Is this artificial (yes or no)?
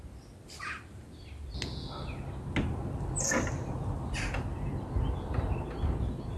no